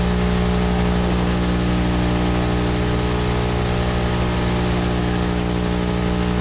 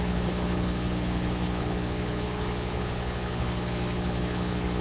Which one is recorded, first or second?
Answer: first